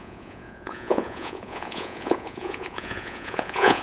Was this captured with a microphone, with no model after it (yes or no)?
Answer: no